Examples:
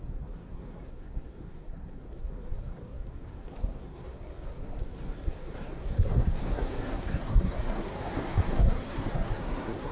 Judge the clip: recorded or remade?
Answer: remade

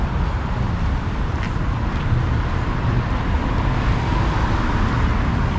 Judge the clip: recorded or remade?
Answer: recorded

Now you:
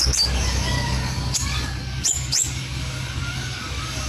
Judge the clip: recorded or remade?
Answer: remade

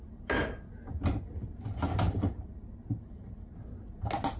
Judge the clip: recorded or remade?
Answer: recorded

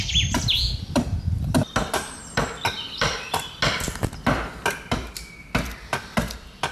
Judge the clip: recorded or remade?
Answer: recorded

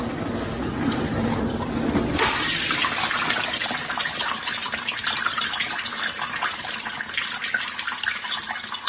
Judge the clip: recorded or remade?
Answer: recorded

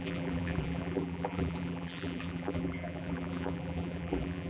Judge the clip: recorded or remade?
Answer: remade